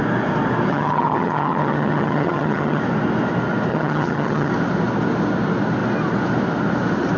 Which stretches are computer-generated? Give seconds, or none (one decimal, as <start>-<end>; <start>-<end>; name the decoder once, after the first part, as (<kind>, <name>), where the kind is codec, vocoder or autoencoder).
0.7-2.8 (vocoder, HiFi-GAN); 3.7-4.5